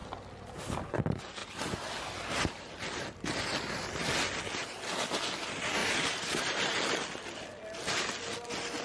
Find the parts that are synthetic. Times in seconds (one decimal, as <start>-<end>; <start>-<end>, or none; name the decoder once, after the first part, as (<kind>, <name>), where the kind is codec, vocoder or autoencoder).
5.8-6.5 (vocoder, BigVGAN v2)